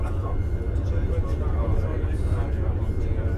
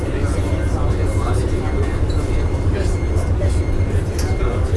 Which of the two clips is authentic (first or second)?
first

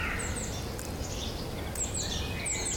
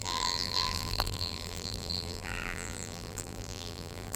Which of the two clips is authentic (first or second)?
first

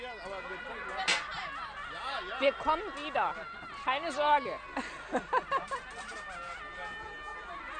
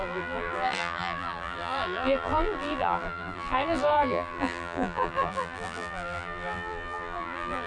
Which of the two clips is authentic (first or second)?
first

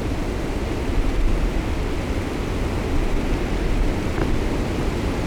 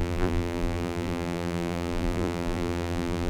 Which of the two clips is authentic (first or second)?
first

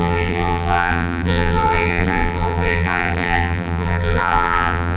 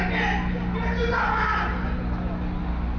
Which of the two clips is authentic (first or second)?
second